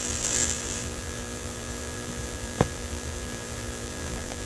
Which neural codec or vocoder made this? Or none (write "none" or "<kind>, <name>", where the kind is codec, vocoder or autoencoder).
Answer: vocoder, BigVGAN v2